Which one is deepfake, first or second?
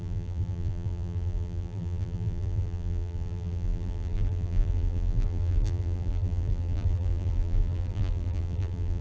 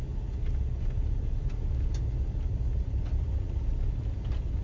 first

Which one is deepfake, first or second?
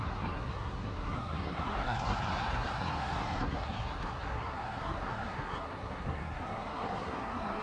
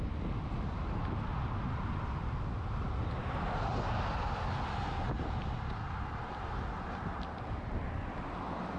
first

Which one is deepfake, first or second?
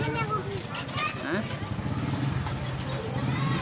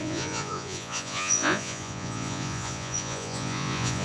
second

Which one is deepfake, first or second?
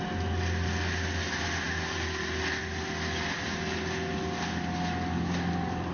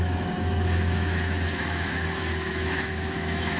second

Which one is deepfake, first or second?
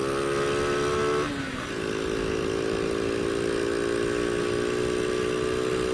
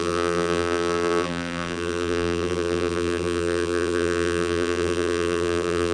second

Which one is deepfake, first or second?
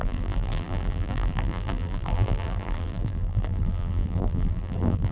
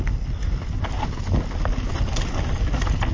first